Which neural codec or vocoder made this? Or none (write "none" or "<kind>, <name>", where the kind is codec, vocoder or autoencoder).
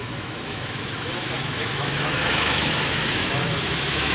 autoencoder, DAC-VAE